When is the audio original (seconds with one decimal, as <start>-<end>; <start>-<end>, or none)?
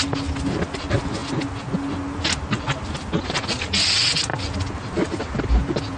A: 0.0-6.0